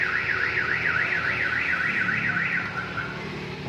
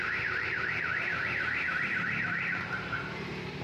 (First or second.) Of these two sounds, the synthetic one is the second